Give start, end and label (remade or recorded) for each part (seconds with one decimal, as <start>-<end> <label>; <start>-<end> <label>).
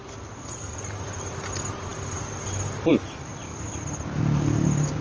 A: 0.0-5.0 recorded